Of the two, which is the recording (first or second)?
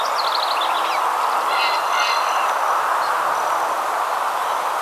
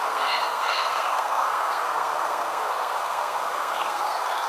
first